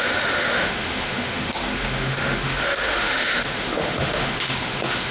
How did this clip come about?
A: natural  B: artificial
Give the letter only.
B